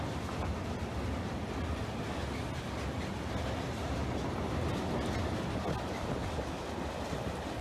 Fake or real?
real